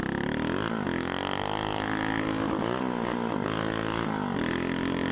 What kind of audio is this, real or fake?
real